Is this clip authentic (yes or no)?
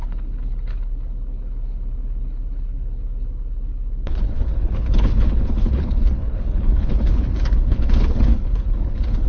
no